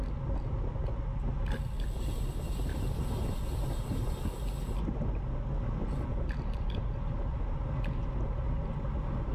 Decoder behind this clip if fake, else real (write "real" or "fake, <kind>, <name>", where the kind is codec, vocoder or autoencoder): real